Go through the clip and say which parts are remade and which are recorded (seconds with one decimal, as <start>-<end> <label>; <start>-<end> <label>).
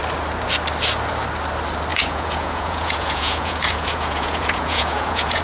0.0-1.9 recorded; 1.9-5.4 remade